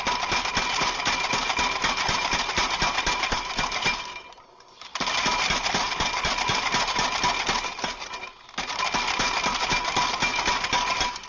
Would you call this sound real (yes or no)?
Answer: yes